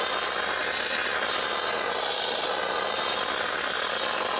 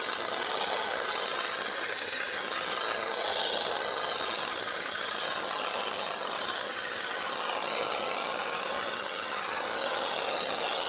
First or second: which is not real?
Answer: second